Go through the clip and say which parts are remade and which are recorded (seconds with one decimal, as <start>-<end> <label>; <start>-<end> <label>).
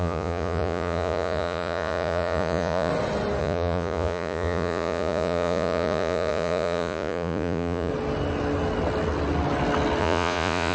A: 0.0-2.9 remade; 2.9-3.4 recorded; 3.4-7.9 remade; 7.9-10.0 recorded; 10.0-10.7 remade